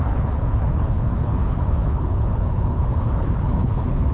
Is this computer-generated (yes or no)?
yes